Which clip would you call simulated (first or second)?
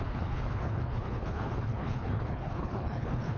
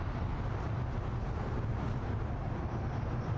first